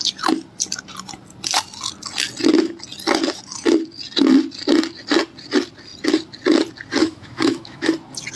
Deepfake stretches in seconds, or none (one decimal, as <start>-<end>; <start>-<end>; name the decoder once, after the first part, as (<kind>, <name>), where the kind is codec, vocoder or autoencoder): 7.0-7.9 (autoencoder, DAC-VAE)